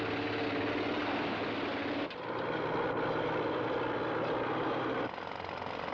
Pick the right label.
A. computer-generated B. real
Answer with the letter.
B